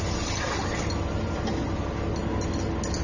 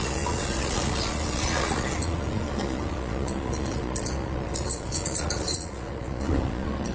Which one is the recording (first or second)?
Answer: first